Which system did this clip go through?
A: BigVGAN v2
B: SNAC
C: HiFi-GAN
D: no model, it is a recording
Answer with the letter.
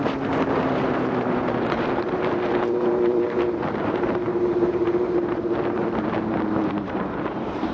A